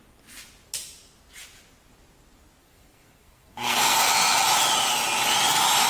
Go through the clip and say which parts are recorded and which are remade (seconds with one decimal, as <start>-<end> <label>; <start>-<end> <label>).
0.0-2.6 recorded; 2.6-4.0 remade; 4.0-5.9 recorded